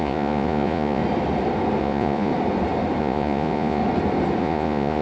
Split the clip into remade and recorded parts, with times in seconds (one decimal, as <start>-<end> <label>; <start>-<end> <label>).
0.0-1.0 remade; 1.0-1.8 recorded; 1.8-2.3 remade; 2.3-3.0 recorded; 3.0-3.8 remade; 3.8-4.4 recorded; 4.4-5.0 remade